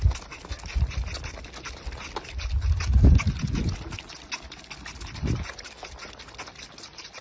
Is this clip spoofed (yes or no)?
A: no